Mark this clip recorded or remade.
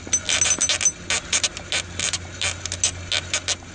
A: recorded